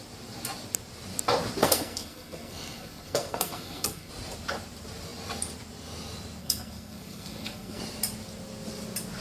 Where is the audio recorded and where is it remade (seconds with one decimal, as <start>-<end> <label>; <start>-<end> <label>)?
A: 0.0-1.6 recorded; 1.6-4.1 remade; 4.1-6.4 recorded; 6.4-7.8 remade; 7.8-9.2 recorded